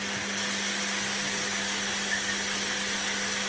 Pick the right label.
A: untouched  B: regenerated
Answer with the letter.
A